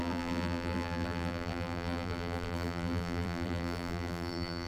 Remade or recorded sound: remade